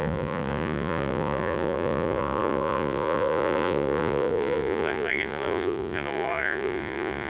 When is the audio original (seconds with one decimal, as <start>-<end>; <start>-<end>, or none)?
none